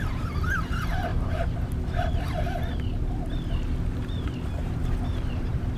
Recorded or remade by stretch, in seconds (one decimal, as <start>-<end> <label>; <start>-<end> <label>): 0.0-1.1 remade; 1.1-4.6 recorded; 4.6-5.8 remade